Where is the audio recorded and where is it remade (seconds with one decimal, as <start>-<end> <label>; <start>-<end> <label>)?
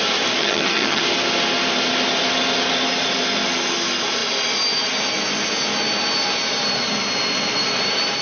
0.0-0.4 recorded; 0.4-1.0 remade; 1.0-8.2 recorded